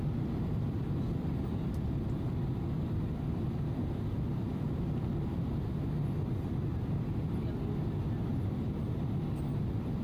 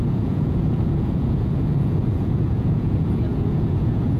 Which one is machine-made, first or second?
second